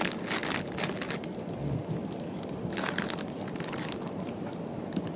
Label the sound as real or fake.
real